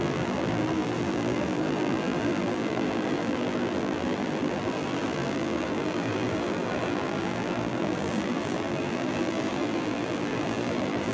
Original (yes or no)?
no